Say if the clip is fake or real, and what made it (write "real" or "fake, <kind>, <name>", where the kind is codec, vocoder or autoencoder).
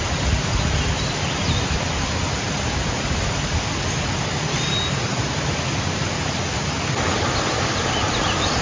real